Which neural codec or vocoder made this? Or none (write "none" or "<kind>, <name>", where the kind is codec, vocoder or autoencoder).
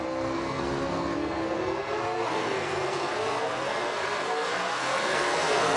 codec, SNAC